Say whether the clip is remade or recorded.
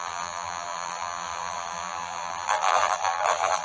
remade